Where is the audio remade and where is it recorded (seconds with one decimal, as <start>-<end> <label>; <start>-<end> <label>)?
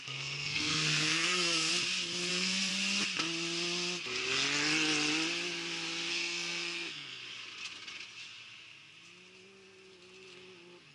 0.0-1.7 remade; 1.7-2.3 recorded; 2.3-2.7 remade; 2.7-6.1 recorded; 6.1-7.2 remade; 7.2-10.9 recorded